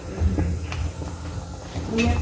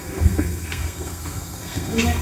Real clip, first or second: first